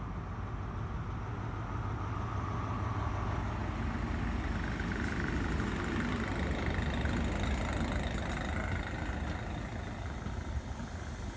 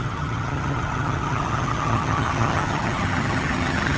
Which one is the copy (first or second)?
second